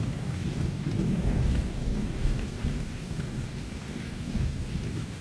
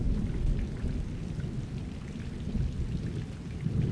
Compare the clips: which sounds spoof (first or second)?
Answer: first